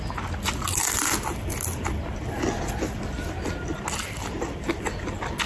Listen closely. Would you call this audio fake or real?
real